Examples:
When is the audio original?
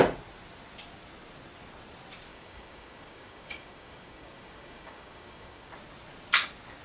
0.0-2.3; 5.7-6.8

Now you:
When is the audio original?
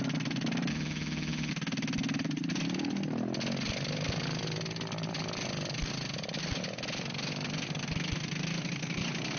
0.0-0.7; 1.5-9.4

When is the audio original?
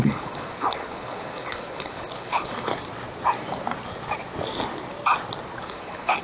2.7-5.6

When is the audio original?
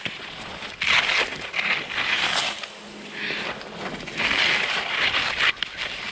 0.0-6.1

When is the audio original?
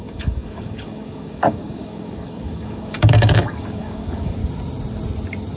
4.4-5.6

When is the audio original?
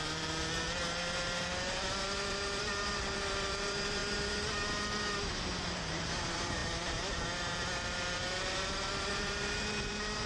none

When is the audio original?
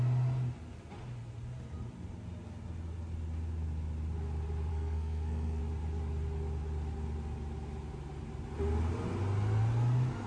0.0-4.7; 5.6-10.3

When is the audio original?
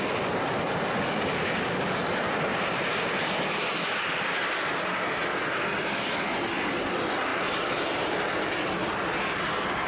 0.0-2.1; 2.7-7.3; 8.7-9.9